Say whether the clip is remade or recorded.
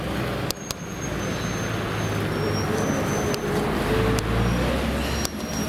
recorded